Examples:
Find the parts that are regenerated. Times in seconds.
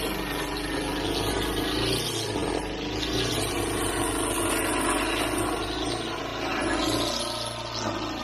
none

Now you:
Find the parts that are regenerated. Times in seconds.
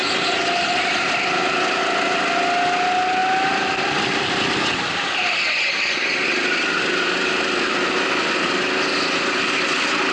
none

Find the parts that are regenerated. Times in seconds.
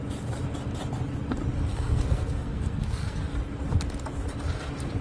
1.7-3.2 (codec, SNAC)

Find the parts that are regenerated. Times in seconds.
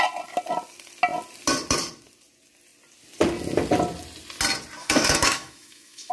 4.8-6.1 (autoencoder, DAC-VAE)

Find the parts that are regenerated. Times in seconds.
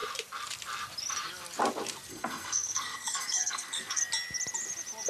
2.1-4.0 (codec, SNAC)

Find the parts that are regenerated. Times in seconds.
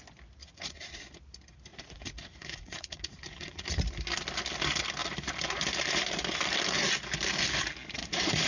0.4-1.0 (vocoder, Vocos); 1.7-3.8; 8.0-8.5